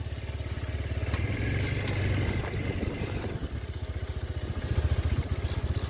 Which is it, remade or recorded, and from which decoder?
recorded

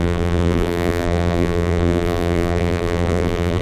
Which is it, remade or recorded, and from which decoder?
remade, vocoder, BigVGAN v2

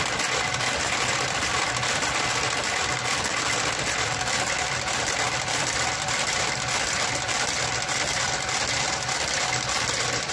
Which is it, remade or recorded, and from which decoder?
remade, vocoder, BigVGAN v2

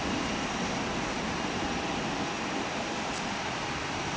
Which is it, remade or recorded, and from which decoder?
remade, vocoder, BigVGAN v2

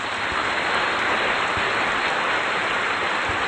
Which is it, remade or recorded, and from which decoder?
remade, vocoder, BigVGAN v2